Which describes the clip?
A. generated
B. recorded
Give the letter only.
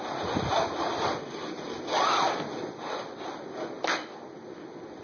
B